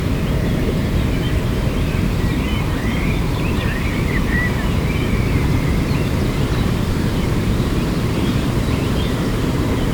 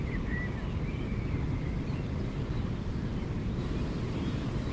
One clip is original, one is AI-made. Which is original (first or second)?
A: second